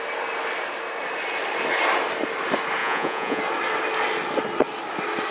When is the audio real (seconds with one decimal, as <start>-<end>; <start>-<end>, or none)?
0.0-2.8; 3.4-5.3